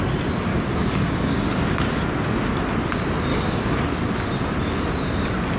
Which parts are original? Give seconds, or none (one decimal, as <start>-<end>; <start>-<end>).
0.0-0.5; 1.4-3.3; 3.8-5.6